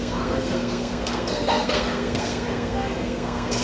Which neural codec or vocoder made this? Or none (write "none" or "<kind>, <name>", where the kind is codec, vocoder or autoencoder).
codec, SNAC